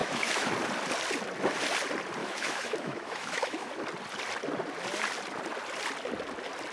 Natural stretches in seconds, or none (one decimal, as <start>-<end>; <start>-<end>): 0.5-2.2; 3.7-6.7